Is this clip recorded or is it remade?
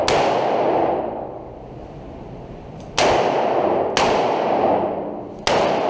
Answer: recorded